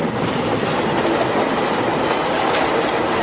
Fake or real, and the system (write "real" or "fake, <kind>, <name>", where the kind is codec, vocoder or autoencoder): fake, vocoder, BigVGAN v2